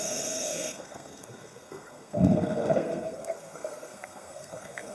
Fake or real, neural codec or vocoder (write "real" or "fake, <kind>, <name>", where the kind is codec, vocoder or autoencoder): fake, codec, SNAC